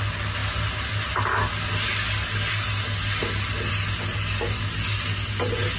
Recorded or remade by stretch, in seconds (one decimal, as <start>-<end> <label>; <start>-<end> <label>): 0.0-5.8 recorded